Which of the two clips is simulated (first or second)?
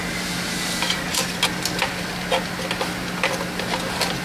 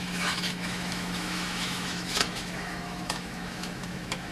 second